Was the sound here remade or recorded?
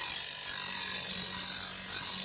recorded